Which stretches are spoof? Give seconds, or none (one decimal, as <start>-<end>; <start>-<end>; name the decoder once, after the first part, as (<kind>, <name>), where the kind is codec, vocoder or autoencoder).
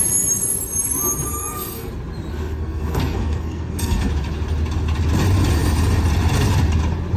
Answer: 1.4-1.9 (codec, SNAC); 2.3-4.1